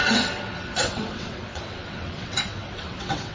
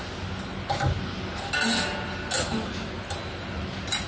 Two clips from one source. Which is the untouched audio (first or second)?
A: second